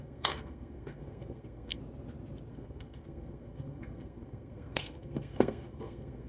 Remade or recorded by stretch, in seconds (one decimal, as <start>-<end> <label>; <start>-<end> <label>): 0.0-1.8 remade; 1.8-2.5 recorded; 2.5-6.3 remade

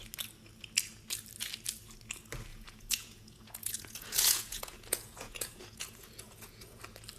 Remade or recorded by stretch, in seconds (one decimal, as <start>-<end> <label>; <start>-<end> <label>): 0.0-2.5 recorded; 2.5-6.8 remade; 6.8-7.2 recorded

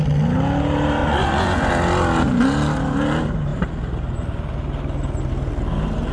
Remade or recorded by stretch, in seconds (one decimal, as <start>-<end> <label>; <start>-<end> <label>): 0.0-1.0 recorded; 1.0-1.7 remade; 1.7-6.1 recorded

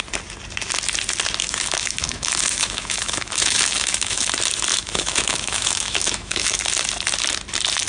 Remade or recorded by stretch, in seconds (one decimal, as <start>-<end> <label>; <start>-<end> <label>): 0.0-1.4 recorded; 1.4-4.3 remade; 4.3-4.7 recorded; 4.7-6.6 remade; 6.6-7.9 recorded

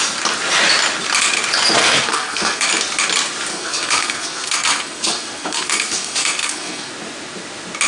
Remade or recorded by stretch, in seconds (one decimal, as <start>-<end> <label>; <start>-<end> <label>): 0.0-1.8 recorded; 1.8-2.7 remade; 2.7-3.5 recorded; 3.5-6.9 remade; 6.9-7.9 recorded

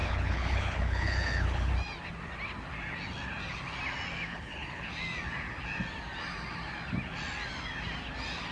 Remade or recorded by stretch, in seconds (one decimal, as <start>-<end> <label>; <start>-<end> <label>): 0.0-1.7 remade; 1.7-4.3 recorded; 4.3-4.9 remade; 4.9-8.5 recorded

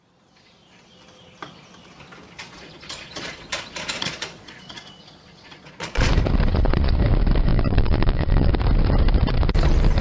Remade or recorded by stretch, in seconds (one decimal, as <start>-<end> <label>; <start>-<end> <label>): 0.0-2.4 recorded; 2.4-6.1 remade; 6.1-6.5 recorded; 6.5-7.0 remade; 7.0-7.5 recorded; 7.5-8.5 remade; 8.5-10.0 recorded